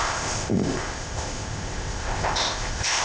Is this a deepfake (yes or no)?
yes